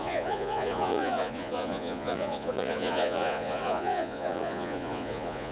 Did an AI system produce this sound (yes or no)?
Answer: yes